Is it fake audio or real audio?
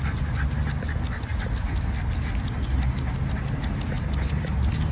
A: real